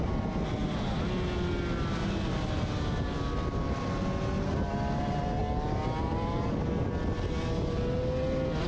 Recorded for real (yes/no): yes